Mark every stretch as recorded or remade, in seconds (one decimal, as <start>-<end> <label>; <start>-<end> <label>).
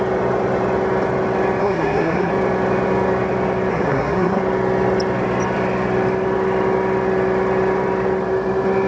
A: 0.0-1.6 recorded; 1.6-2.3 remade; 2.3-3.7 recorded; 3.7-4.4 remade; 4.4-8.9 recorded